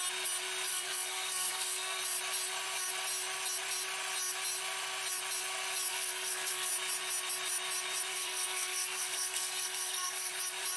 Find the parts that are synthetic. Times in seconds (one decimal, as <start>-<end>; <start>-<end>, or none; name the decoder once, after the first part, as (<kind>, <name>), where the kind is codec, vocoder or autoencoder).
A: 0.7-2.0 (codec, SNAC); 5.9-6.7; 8.1-10.3